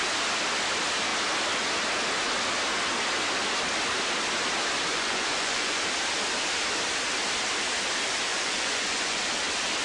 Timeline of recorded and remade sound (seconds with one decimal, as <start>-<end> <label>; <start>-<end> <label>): 0.0-4.9 recorded; 4.9-5.8 remade; 5.8-8.3 recorded; 8.3-9.2 remade; 9.2-9.8 recorded